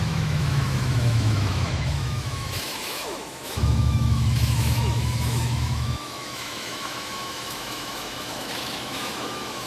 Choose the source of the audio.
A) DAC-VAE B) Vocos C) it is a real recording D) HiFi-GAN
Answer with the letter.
A